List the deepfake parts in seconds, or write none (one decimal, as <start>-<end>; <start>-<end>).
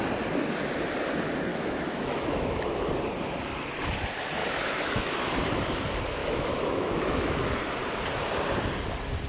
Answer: 1.5-2.8; 4.4-5.3; 6.2-7.3